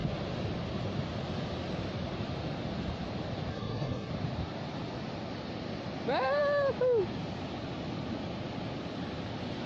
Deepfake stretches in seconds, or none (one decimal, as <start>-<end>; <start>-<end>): 3.5-4.1